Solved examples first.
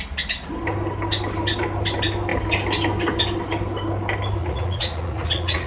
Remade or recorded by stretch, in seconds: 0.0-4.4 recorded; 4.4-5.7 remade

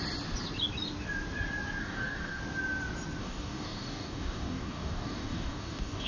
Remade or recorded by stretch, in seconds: 0.0-1.8 recorded; 1.8-2.4 remade; 2.4-3.2 recorded; 3.2-6.1 remade

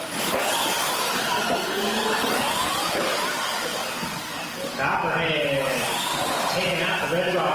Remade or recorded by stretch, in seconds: 0.0-7.5 recorded